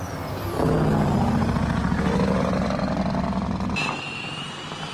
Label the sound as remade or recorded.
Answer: recorded